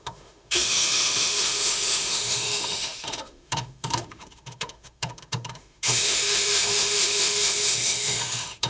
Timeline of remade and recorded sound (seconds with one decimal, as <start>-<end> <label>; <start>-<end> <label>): 0.0-8.7 remade

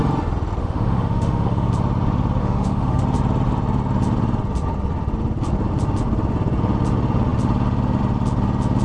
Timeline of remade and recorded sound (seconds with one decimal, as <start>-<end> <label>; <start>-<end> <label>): 0.0-0.6 recorded; 0.6-1.7 remade; 1.7-2.4 recorded; 2.4-3.0 remade; 3.0-8.8 recorded

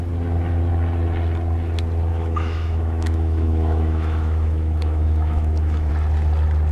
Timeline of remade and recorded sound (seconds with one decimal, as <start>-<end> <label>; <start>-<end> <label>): 0.0-2.1 recorded; 2.1-5.9 remade; 5.9-6.7 recorded

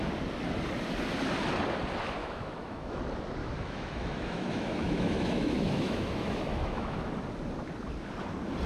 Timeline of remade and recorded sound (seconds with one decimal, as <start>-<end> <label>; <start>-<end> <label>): 0.0-2.2 recorded; 2.2-3.0 remade; 3.0-3.4 recorded; 3.4-7.1 remade; 7.1-8.7 recorded

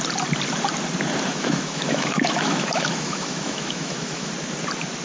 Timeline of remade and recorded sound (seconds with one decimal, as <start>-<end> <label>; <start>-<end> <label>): 0.0-1.3 recorded; 1.3-4.3 remade; 4.3-5.0 recorded

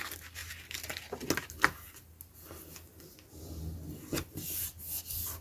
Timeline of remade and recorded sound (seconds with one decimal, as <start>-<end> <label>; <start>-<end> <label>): 0.0-5.4 recorded

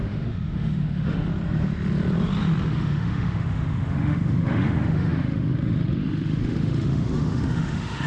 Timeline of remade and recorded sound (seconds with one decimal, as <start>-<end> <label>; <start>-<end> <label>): 0.0-1.3 remade; 1.3-2.7 recorded; 2.7-8.1 remade